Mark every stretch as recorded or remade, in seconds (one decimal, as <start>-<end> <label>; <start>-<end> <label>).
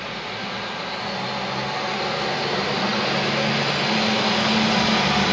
0.0-5.3 recorded